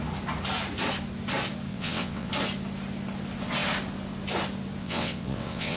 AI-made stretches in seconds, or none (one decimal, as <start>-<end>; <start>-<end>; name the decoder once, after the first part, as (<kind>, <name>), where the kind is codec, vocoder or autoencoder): 1.7-2.3 (vocoder, WaveNeXt); 4.8-5.8